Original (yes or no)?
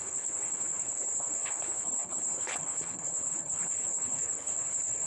no